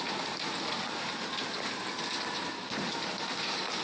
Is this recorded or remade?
recorded